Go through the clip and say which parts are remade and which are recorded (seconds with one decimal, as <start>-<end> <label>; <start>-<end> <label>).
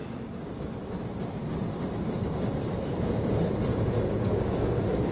0.0-0.6 remade; 0.6-3.7 recorded; 3.7-5.1 remade